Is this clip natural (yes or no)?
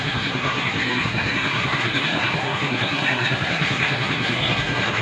no